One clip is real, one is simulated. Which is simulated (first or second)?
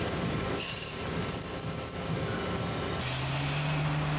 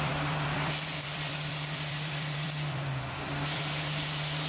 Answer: second